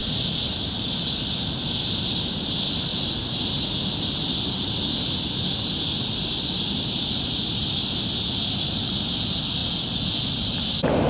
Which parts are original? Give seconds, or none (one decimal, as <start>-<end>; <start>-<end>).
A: 0.0-2.4; 2.9-3.9; 9.6-10.2